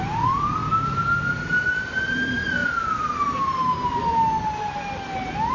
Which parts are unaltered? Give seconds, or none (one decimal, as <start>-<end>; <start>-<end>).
0.6-1.3; 2.6-5.5